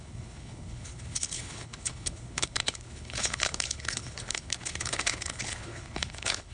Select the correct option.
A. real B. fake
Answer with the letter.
B